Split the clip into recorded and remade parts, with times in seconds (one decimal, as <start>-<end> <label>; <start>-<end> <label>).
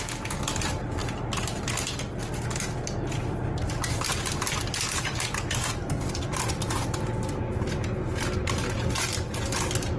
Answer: 0.0-10.0 recorded